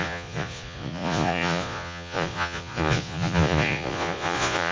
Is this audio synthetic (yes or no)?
yes